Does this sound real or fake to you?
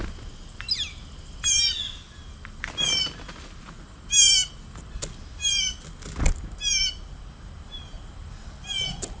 real